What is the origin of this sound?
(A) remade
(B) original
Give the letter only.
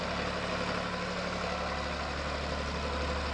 B